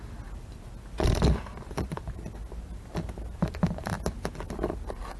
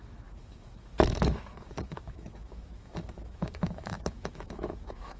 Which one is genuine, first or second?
first